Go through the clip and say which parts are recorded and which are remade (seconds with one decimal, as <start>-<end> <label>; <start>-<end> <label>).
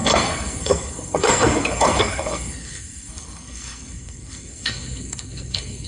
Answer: 0.0-5.9 remade